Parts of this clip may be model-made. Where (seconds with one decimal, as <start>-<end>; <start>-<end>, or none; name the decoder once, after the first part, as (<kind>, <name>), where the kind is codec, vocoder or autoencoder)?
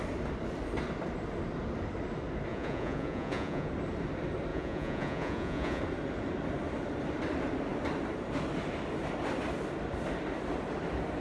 2.5-3.7 (vocoder, Vocos); 4.5-5.8